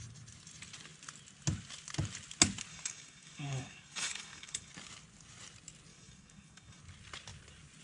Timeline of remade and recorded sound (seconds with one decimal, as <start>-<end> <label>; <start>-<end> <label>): 0.0-2.7 recorded; 2.7-4.7 remade; 4.7-5.9 recorded; 5.9-6.8 remade; 6.8-7.8 recorded

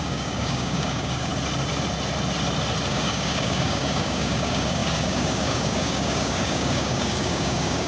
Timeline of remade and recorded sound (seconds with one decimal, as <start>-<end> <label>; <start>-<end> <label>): 0.0-1.3 remade; 1.3-2.9 recorded; 2.9-7.9 remade

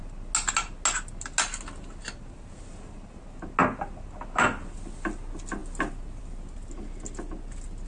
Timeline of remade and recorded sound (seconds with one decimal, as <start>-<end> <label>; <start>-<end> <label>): 0.0-7.9 recorded

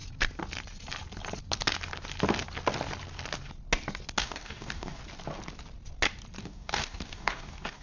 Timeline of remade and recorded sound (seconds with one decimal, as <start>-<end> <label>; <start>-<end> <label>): 0.0-4.2 recorded; 4.2-5.0 remade; 5.0-6.4 recorded; 6.4-7.8 remade